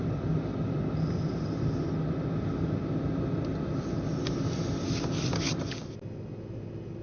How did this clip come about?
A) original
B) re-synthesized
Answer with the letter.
A